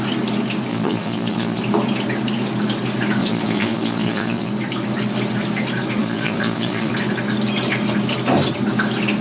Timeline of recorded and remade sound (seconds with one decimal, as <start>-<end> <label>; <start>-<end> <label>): 0.0-0.7 recorded; 0.7-1.6 remade; 1.6-3.2 recorded; 3.2-4.5 remade; 4.5-6.0 recorded; 6.0-6.9 remade; 6.9-9.2 recorded